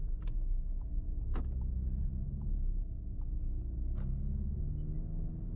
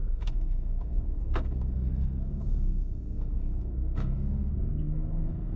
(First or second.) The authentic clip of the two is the first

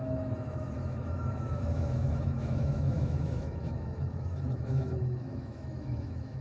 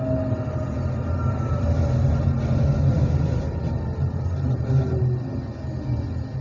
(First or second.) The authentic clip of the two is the second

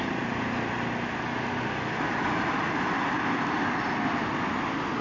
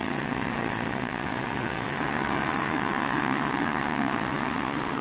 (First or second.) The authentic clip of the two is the first